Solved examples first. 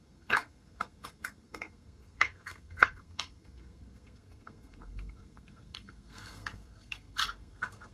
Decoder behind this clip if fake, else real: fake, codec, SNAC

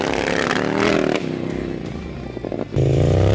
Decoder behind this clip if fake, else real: real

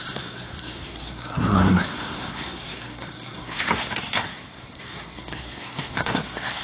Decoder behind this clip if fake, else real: fake, codec, SNAC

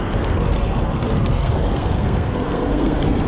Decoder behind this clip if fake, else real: fake, codec, SNAC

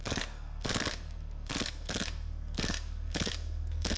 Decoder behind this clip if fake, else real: fake, codec, SNAC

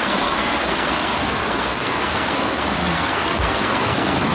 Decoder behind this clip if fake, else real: fake, codec, SNAC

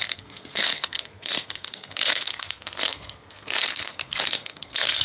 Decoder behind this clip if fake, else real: fake, codec, SNAC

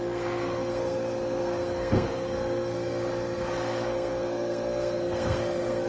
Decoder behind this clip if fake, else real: fake, codec, SNAC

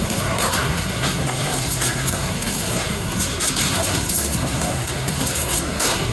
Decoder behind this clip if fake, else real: fake, codec, SNAC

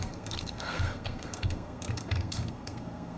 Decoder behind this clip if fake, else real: fake, codec, SNAC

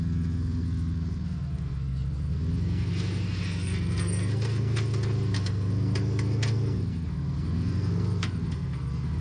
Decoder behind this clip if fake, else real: fake, codec, SNAC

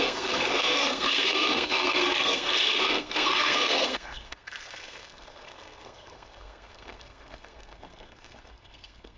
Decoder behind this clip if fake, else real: fake, codec, SNAC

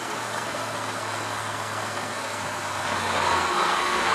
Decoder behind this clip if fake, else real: fake, codec, SNAC